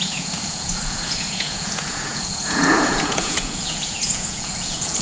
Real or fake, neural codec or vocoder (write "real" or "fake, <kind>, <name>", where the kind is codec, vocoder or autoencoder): fake, vocoder, Vocos